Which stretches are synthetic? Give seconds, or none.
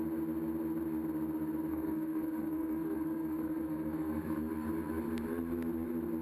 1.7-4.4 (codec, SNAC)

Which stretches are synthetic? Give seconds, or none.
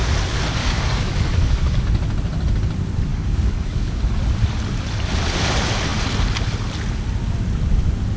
0.6-1.8 (codec, DAC); 3.1-4.0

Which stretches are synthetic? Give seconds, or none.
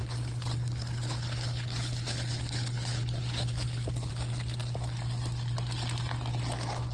0.0-4.1 (codec, HILCodec)